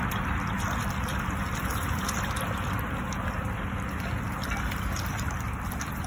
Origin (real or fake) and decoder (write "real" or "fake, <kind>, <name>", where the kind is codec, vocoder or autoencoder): real